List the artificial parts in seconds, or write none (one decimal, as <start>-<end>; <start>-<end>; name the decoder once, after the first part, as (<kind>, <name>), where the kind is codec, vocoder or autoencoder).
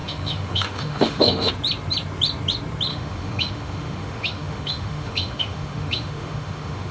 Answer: 0.0-1.5 (autoencoder, DAC-VAE); 2.9-6.9